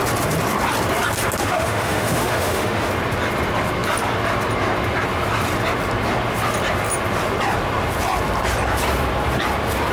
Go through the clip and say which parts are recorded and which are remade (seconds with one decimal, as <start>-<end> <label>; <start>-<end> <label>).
0.0-1.4 recorded; 1.4-2.9 remade; 2.9-9.9 recorded